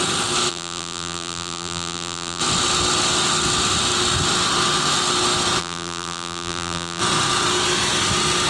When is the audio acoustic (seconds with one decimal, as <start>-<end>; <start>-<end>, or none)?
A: 0.0-0.5; 2.4-5.6; 7.0-8.5